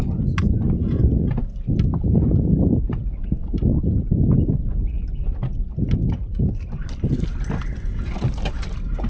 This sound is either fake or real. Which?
real